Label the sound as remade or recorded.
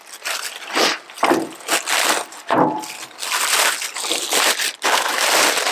recorded